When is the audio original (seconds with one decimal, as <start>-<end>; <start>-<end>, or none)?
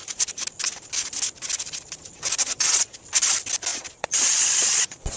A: 0.0-2.4; 3.0-3.7